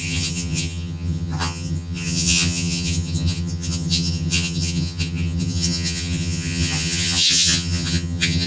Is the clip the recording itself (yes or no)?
no